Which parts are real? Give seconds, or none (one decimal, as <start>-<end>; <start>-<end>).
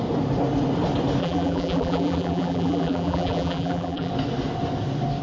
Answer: 0.0-1.2; 4.1-5.2